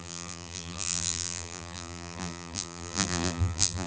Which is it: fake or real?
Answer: fake